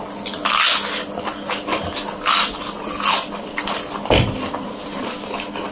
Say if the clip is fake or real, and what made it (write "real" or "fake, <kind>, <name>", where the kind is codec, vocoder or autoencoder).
real